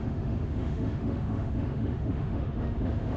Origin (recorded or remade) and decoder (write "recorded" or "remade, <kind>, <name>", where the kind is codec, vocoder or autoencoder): remade, autoencoder, DAC-VAE